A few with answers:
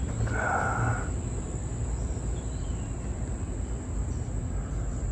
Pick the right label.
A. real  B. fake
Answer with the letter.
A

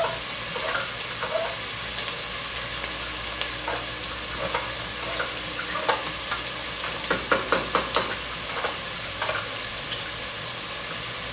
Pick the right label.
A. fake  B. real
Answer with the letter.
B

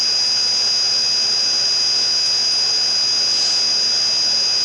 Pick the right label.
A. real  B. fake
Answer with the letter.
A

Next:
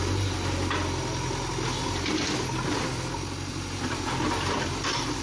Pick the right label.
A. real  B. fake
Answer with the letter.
A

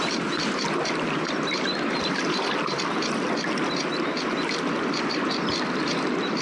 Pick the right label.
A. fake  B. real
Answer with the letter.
B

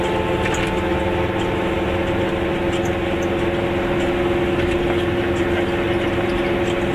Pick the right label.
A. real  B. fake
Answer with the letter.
A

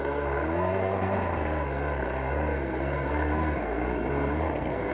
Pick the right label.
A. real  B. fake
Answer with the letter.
B